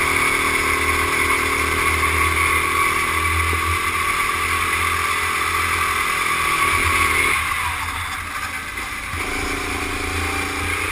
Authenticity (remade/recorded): recorded